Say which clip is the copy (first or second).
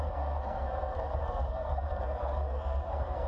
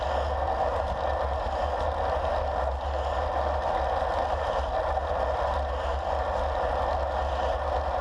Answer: first